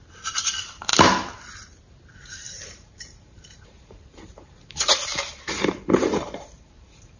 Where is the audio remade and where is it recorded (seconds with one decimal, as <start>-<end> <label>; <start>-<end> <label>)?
0.0-0.9 remade; 0.9-2.1 recorded; 2.1-7.2 remade